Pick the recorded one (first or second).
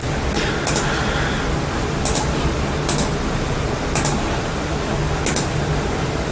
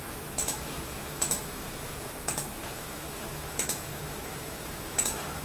first